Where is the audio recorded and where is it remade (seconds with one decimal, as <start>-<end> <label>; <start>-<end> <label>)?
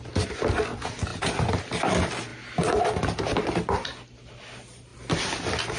0.0-4.9 recorded; 4.9-5.8 remade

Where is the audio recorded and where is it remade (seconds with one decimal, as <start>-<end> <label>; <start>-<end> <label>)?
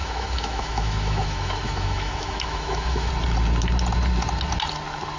0.0-3.1 remade; 3.1-5.2 recorded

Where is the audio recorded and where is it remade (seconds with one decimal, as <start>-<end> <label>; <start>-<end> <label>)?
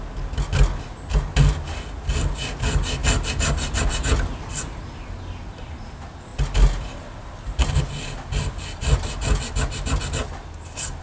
0.0-11.0 recorded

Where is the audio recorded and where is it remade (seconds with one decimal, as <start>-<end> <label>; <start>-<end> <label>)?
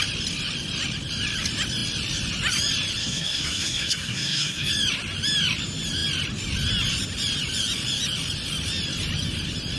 0.0-3.0 recorded; 3.0-4.7 remade; 4.7-9.8 recorded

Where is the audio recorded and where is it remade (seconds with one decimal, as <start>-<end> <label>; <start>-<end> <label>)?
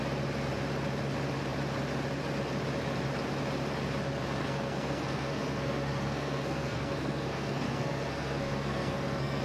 0.0-4.4 recorded; 4.4-9.4 remade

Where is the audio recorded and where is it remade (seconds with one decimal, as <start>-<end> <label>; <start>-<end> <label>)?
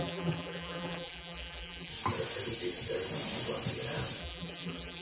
0.0-1.9 remade; 1.9-4.2 recorded; 4.2-5.0 remade